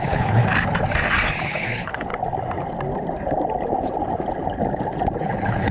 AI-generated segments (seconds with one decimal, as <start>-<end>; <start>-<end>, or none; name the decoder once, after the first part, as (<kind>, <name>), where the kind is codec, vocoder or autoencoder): 0.0-0.4 (codec, HILCodec); 1.4-2.1; 5.2-5.7